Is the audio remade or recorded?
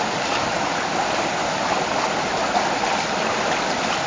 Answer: remade